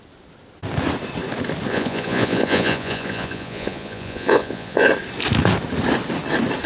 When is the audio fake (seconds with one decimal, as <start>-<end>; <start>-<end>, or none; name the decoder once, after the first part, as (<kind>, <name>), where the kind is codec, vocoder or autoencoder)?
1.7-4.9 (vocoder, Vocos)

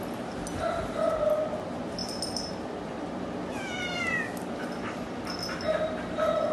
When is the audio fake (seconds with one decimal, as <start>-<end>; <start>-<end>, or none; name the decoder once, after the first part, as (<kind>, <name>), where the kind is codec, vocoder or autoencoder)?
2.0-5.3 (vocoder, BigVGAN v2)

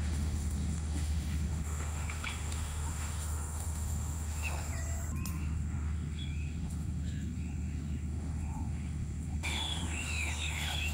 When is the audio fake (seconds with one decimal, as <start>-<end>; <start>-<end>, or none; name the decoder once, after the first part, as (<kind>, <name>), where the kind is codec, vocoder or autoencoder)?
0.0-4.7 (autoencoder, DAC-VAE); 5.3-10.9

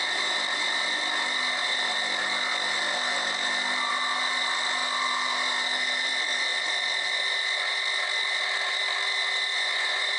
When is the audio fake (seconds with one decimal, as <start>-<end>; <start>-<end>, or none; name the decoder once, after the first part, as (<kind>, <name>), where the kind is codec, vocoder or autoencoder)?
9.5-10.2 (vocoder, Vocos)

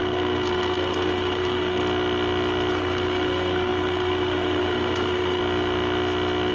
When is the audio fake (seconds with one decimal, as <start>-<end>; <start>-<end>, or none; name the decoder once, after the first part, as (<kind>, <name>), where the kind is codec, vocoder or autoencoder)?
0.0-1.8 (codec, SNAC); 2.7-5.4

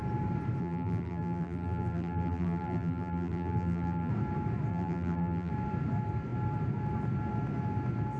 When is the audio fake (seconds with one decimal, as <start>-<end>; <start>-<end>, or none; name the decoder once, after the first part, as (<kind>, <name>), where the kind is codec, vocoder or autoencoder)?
0.6-4.1 (vocoder, BigVGAN v2); 4.7-5.5